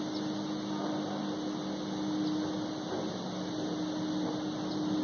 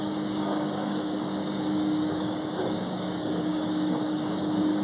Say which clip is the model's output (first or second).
second